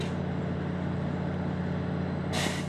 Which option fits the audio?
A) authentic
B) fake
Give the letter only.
A